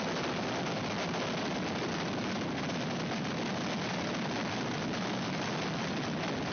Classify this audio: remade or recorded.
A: recorded